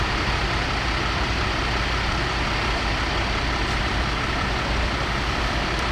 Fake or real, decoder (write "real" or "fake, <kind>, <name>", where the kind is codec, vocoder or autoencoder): real